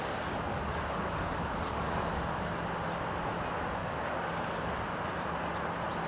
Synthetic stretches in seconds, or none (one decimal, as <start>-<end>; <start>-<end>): 0.5-2.5; 3.8-4.7